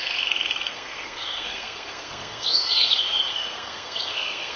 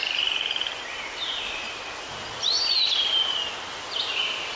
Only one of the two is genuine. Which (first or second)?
second